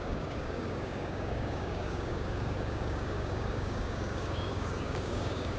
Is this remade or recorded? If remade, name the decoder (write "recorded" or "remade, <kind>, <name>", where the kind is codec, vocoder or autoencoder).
remade, codec, DAC